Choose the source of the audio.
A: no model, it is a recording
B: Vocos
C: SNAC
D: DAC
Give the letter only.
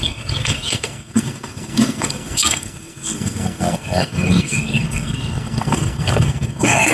C